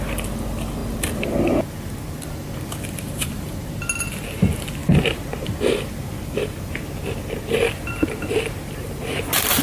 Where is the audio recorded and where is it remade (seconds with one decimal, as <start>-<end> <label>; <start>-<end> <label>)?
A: 0.0-9.6 recorded